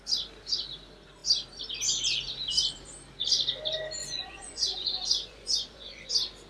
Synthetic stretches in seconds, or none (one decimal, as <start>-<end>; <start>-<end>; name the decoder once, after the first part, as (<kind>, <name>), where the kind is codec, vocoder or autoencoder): 4.0-6.1 (vocoder, Vocos)